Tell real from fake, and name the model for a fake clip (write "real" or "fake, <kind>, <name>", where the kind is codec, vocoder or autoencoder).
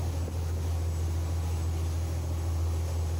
real